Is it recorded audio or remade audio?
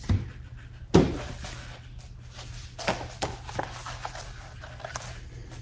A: recorded